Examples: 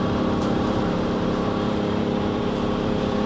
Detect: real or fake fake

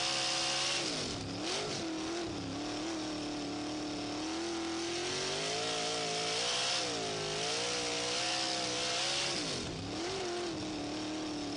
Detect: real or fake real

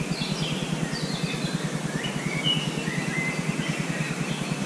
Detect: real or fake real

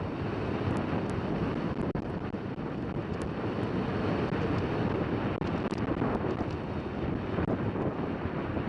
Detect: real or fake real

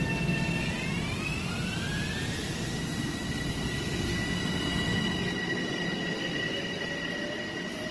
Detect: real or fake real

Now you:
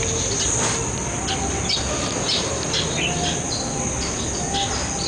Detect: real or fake real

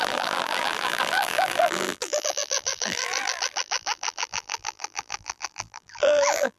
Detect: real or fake fake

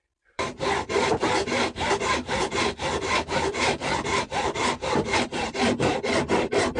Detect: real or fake fake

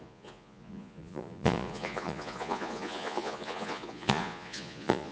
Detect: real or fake fake